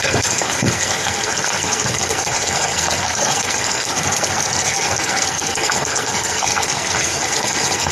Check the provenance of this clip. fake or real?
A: fake